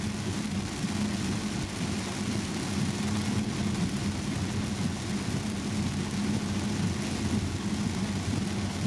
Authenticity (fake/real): real